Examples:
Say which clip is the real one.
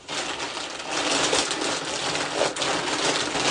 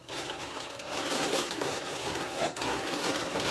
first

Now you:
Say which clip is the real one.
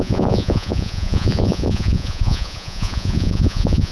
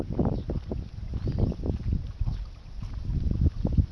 second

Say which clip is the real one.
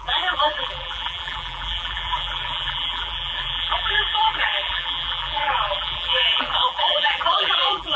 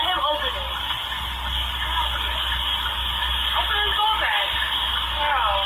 second